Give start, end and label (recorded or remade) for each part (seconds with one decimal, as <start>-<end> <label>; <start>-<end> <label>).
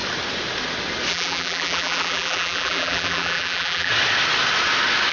0.0-1.1 recorded; 1.1-3.9 remade; 3.9-5.1 recorded